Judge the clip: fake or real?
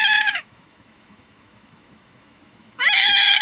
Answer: fake